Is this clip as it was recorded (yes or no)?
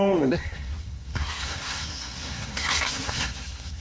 no